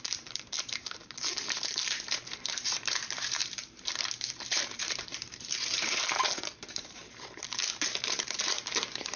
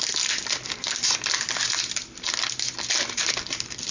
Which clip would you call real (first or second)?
second